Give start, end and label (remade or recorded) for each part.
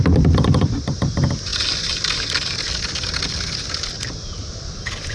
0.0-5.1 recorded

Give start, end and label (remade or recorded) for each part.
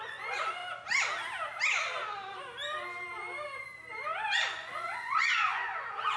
0.0-0.6 remade; 0.6-4.3 recorded; 4.3-6.2 remade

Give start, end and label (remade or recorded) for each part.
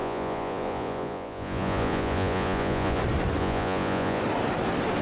0.0-3.0 remade; 3.0-3.4 recorded; 3.4-4.2 remade; 4.2-5.0 recorded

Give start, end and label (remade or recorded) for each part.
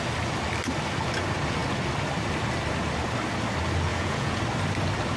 0.0-3.9 recorded; 3.9-4.4 remade; 4.4-5.2 recorded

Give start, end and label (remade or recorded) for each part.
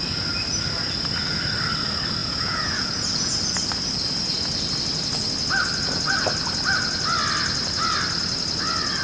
0.0-2.2 recorded; 2.2-3.4 remade; 3.4-9.0 recorded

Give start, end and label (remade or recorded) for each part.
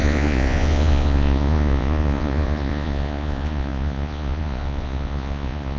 0.0-5.8 remade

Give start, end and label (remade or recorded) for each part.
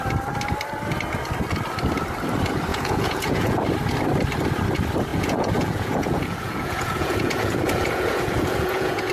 0.0-2.7 recorded; 2.7-3.6 remade; 3.6-5.1 recorded; 5.1-9.1 remade